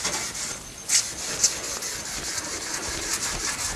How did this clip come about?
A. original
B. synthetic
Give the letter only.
A